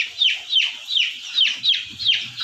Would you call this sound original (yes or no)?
yes